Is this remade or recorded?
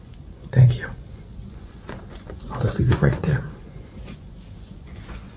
remade